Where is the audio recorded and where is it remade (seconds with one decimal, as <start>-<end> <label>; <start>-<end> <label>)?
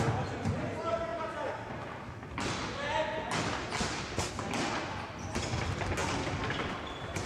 0.0-7.3 recorded